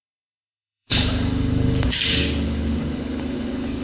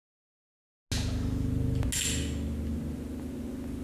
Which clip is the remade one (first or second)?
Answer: first